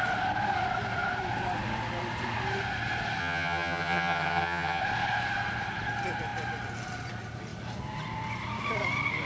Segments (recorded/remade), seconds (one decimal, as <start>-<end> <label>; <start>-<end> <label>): 0.0-3.2 recorded; 3.2-4.8 remade; 4.8-9.3 recorded